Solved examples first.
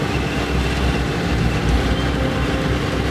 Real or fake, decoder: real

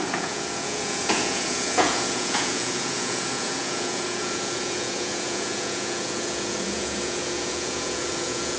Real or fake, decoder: fake, vocoder, Vocos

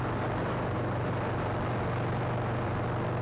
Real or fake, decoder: real